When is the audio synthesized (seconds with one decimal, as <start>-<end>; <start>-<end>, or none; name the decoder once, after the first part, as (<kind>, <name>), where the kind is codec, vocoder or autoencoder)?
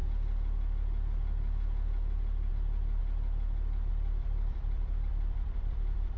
2.5-3.0 (vocoder, BigVGAN v2); 3.9-6.2